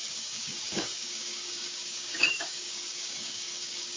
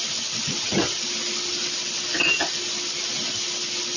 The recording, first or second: second